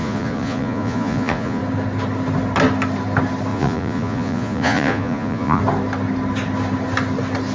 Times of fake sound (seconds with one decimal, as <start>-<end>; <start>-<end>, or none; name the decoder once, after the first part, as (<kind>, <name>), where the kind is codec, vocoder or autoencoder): 0.0-1.6 (vocoder, Vocos); 3.5-5.6